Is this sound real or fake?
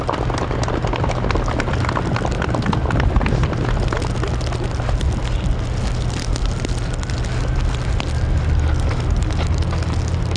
real